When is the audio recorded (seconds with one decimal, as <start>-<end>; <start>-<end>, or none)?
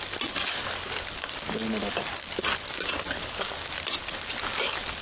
0.0-5.0